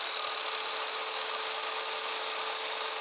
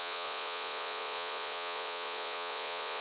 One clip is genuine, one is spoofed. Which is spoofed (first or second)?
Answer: second